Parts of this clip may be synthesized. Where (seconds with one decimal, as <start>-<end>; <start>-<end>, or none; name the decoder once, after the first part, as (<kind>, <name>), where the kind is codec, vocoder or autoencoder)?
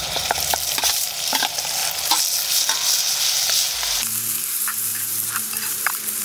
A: 0.0-1.8 (vocoder, BigVGAN v2); 3.2-6.2